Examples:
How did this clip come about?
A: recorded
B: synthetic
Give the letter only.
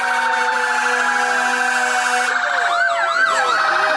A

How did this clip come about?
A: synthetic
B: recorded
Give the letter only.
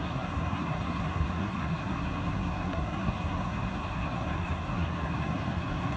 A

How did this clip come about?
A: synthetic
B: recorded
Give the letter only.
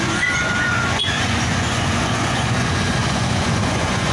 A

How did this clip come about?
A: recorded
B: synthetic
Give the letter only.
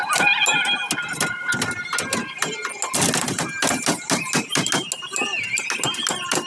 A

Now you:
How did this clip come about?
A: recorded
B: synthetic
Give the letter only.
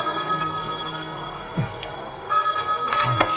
B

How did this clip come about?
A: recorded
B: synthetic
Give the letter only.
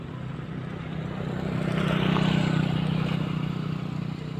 A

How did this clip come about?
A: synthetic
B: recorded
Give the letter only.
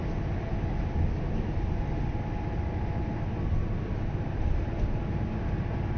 B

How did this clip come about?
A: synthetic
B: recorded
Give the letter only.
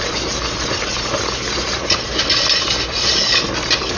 A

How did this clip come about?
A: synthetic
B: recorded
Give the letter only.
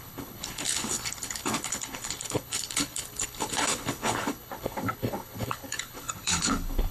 A